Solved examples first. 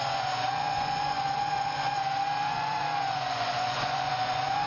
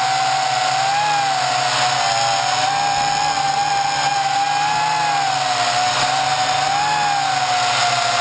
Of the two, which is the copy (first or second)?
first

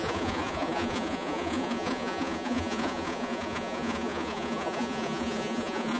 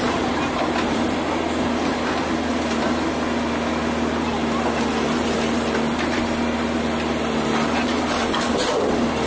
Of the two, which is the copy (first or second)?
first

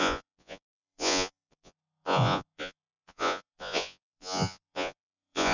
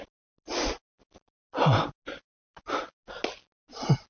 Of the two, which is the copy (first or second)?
first